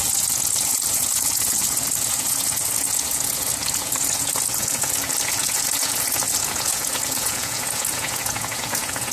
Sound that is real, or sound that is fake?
fake